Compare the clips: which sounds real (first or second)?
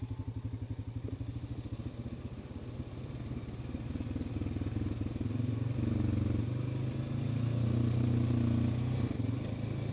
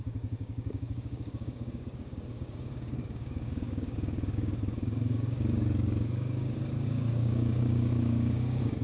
first